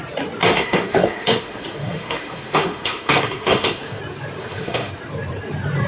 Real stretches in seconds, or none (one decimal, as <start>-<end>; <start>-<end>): 0.0-0.5; 4.0-4.4; 4.9-5.9